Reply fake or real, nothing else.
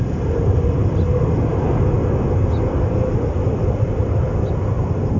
real